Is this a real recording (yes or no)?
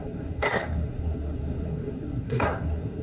no